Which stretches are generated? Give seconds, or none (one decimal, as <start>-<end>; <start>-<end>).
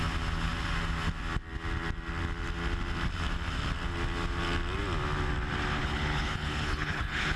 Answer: 5.8-7.4